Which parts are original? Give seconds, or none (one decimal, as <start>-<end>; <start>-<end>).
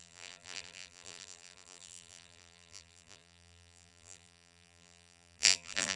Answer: none